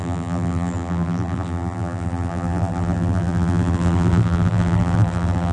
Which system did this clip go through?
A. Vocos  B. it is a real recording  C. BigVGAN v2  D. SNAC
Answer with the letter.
C